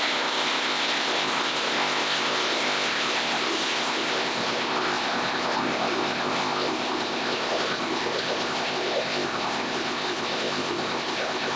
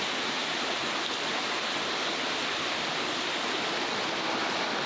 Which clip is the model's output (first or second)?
first